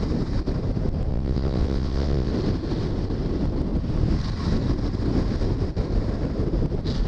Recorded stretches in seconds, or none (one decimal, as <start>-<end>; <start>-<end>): 0.0-1.1; 2.3-7.1